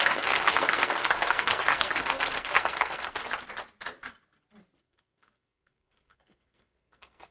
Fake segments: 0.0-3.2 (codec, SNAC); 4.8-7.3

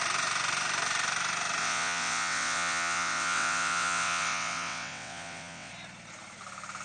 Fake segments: 1.6-5.7 (vocoder, WaveNeXt)